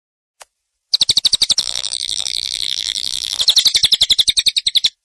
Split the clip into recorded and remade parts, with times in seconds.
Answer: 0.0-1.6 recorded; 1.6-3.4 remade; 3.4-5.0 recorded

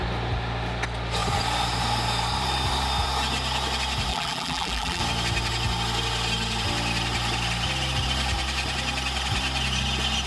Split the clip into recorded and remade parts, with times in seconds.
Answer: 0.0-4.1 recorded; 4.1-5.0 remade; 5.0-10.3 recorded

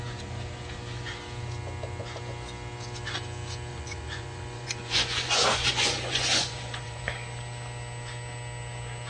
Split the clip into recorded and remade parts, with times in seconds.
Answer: 0.0-3.7 recorded; 3.7-7.0 remade; 7.0-9.1 recorded

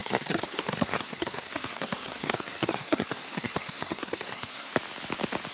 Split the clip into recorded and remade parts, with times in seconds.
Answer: 0.0-4.7 remade; 4.7-5.5 recorded

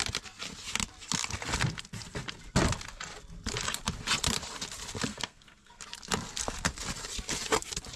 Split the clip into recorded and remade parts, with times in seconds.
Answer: 0.0-5.1 recorded; 5.1-5.8 remade; 5.8-8.0 recorded